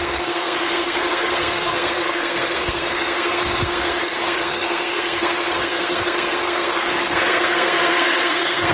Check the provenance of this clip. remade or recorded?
remade